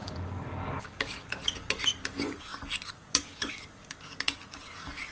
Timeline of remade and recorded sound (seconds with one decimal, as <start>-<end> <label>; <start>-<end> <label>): 0.0-5.1 remade